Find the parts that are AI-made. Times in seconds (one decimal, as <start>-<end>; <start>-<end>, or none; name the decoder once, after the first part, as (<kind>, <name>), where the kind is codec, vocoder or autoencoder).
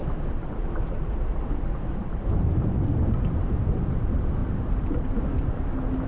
0.0-2.7 (vocoder, BigVGAN v2); 4.4-5.6